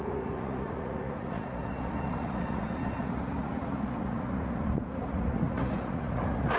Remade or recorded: remade